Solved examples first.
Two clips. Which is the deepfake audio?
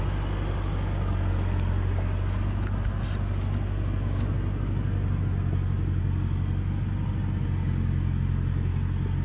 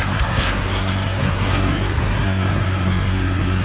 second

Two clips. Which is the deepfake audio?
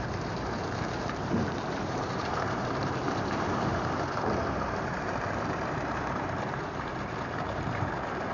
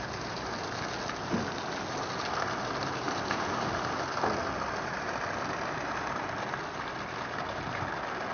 first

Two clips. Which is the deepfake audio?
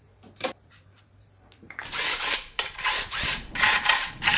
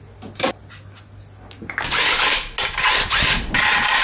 first